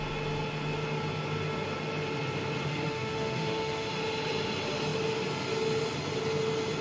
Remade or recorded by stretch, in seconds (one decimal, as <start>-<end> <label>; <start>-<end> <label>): 0.0-2.7 recorded; 2.7-3.9 remade; 3.9-6.8 recorded